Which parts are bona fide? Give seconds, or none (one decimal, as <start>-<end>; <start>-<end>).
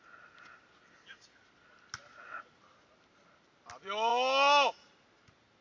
0.0-5.6